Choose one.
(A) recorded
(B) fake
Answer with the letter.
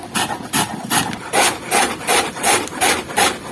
A